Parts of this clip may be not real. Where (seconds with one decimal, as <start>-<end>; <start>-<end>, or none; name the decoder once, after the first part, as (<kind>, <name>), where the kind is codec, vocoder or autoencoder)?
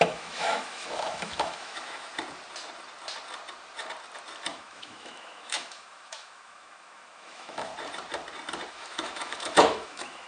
0.0-2.1 (autoencoder, DAC-VAE); 4.5-7.7; 8.7-10.3